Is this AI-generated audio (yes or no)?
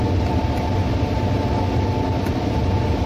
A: no